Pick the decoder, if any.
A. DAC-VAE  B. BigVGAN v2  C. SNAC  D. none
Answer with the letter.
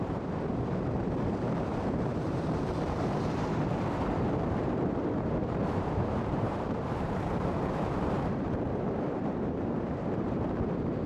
B